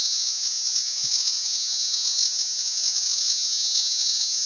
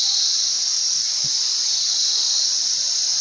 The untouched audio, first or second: second